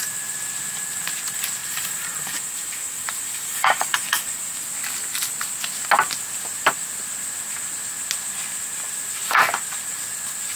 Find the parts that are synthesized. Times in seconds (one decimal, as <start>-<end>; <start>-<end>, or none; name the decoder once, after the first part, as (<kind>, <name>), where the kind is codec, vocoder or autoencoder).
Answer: 1.6-4.6 (vocoder, BigVGAN v2)